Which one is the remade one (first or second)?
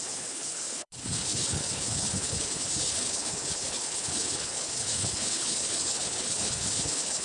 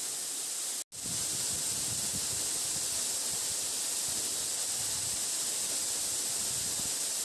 first